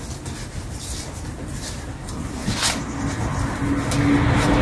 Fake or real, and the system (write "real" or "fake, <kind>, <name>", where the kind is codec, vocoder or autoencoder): real